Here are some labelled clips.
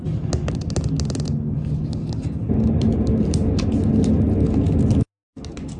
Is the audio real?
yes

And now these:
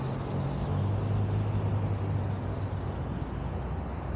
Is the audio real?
yes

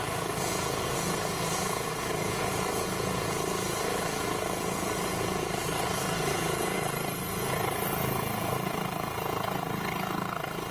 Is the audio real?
no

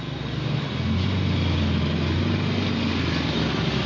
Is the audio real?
yes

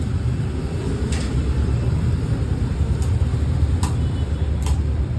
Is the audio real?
yes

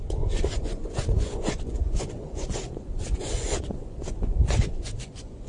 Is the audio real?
no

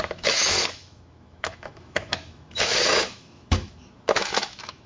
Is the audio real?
no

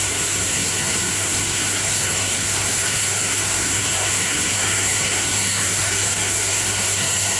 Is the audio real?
no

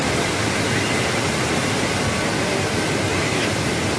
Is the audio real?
yes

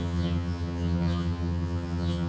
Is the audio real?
no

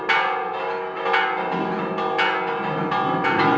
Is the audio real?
yes